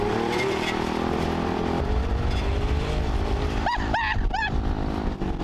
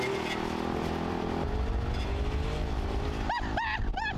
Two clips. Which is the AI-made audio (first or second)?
first